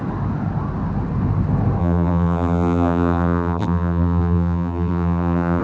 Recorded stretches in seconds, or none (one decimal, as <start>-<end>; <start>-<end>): 0.0-1.8